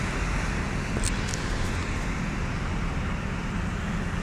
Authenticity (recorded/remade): recorded